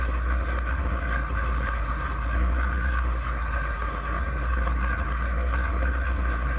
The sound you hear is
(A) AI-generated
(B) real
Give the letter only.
A